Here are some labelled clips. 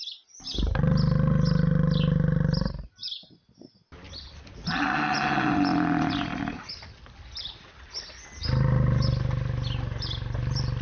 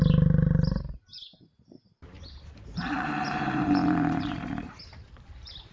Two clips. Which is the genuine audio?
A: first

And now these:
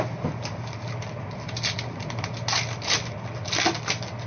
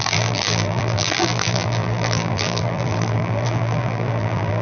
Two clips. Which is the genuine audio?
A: first